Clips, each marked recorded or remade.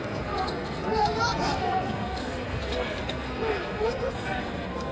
remade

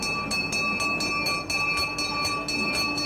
recorded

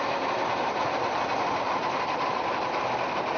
recorded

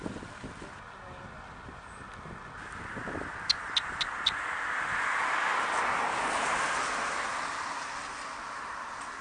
recorded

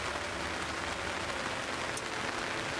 recorded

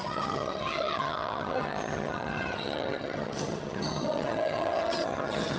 remade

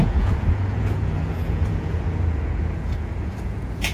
remade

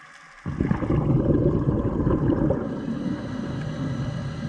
recorded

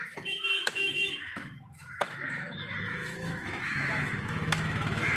remade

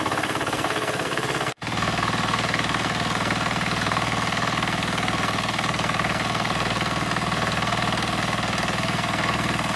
remade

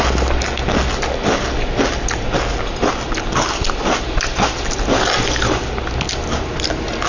recorded